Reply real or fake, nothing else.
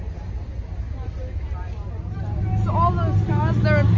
real